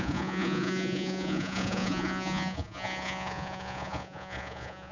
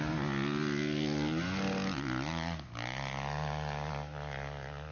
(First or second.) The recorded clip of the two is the second